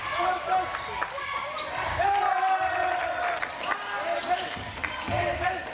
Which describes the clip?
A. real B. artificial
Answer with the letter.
A